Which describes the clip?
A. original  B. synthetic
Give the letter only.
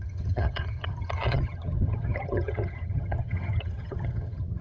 B